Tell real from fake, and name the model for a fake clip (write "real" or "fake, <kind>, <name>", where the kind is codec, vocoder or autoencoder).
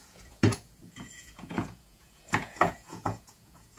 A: fake, vocoder, Vocos